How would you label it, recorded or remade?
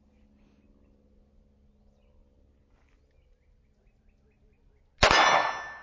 recorded